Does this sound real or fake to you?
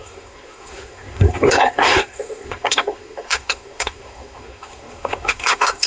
fake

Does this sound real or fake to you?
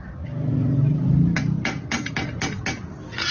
real